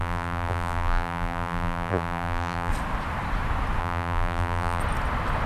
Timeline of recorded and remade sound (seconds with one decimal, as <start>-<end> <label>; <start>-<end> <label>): 0.0-2.7 remade; 2.7-3.8 recorded; 3.8-4.8 remade; 4.8-5.5 recorded